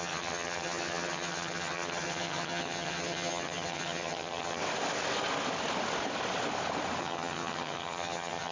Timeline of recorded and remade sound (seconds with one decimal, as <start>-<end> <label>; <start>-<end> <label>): 0.0-4.6 remade; 4.6-7.0 recorded; 7.0-8.5 remade